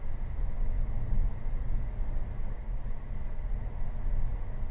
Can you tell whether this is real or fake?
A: real